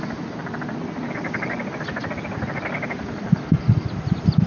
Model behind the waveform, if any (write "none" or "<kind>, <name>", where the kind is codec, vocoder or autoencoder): none